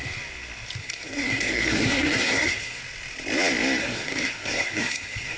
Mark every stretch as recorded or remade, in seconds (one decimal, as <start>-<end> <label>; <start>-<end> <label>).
0.0-0.8 recorded; 0.8-2.8 remade; 2.8-3.8 recorded; 3.8-5.4 remade